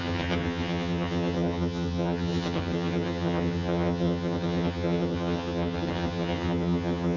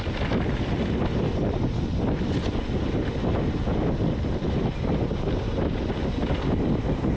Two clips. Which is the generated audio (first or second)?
first